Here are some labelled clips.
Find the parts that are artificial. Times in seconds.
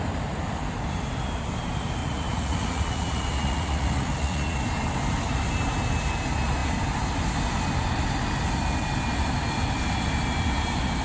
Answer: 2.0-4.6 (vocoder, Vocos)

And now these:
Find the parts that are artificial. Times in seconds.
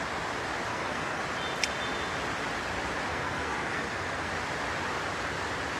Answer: 0.7-1.2 (codec, SNAC); 3.1-4.3